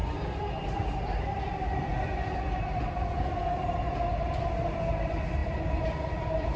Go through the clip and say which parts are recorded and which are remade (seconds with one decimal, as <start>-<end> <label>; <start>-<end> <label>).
0.0-1.9 recorded; 1.9-3.9 remade; 3.9-5.4 recorded; 5.4-6.6 remade